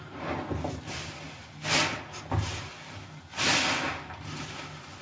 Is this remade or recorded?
recorded